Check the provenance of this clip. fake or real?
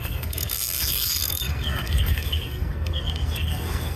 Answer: fake